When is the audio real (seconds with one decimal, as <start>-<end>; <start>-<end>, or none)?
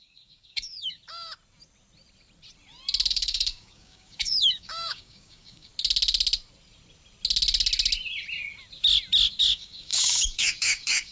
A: 1.0-3.1; 5.7-9.4